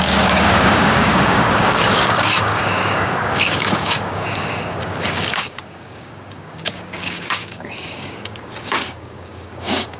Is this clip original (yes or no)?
no